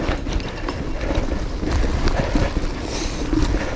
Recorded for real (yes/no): yes